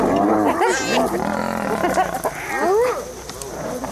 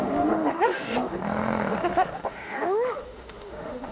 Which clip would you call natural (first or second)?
first